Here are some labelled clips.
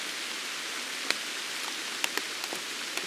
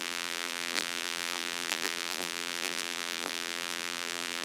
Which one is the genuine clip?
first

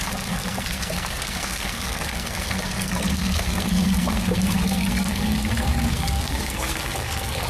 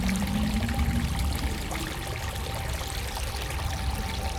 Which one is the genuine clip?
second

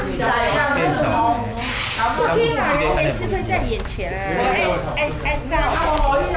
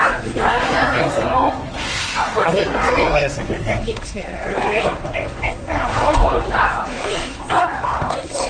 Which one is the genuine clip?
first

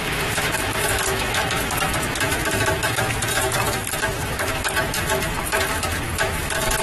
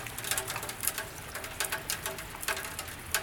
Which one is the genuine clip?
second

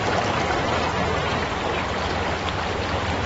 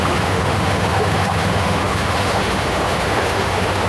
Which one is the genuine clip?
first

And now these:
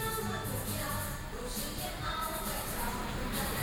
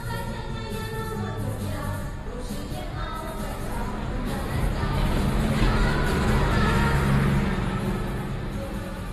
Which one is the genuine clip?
second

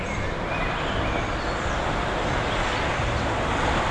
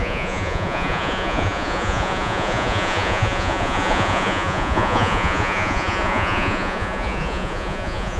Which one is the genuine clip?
first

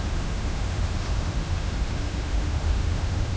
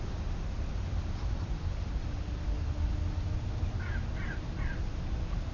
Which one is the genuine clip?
second